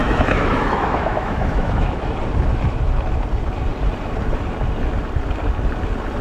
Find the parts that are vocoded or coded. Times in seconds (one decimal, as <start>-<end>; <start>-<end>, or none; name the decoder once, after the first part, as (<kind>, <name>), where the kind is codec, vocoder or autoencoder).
0.0-2.1 (autoencoder, DAC-VAE)

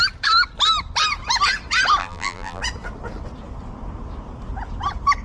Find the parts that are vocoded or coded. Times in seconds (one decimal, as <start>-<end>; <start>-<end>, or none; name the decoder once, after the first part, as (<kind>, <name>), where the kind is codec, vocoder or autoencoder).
2.0-2.6 (vocoder, BigVGAN v2)

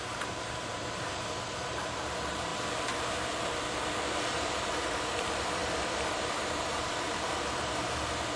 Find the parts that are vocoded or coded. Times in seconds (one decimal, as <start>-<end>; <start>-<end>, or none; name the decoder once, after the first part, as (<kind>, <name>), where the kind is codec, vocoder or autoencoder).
0.0-2.5 (vocoder, BigVGAN v2); 4.3-8.4

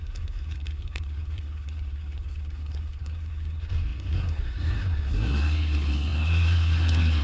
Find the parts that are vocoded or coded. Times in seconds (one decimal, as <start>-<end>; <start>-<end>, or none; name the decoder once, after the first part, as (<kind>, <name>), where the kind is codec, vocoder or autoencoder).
0.0-7.2 (codec, SNAC)

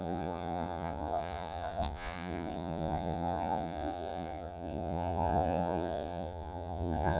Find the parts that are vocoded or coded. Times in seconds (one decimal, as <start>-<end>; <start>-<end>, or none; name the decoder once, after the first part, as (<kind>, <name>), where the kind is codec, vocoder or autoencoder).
0.0-7.2 (vocoder, Vocos)